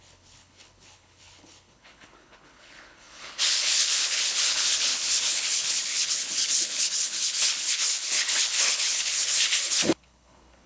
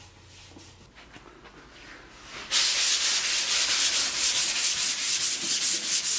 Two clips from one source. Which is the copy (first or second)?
first